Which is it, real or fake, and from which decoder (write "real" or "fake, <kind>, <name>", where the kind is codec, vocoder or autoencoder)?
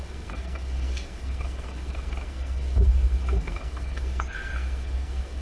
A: fake, codec, SNAC